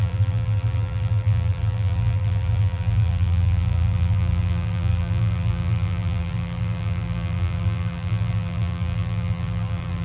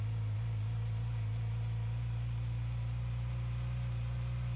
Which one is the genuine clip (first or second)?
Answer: second